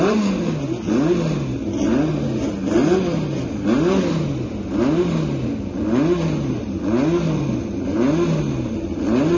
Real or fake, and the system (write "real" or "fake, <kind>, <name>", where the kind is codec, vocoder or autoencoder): real